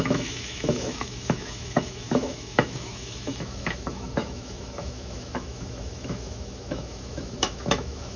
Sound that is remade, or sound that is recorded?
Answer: remade